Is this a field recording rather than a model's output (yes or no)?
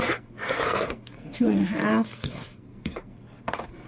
no